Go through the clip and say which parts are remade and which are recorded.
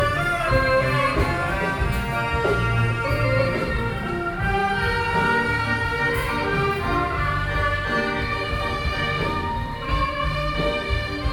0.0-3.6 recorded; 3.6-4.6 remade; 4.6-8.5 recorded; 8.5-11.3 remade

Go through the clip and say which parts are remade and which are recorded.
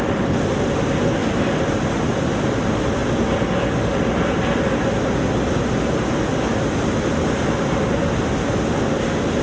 0.0-9.4 recorded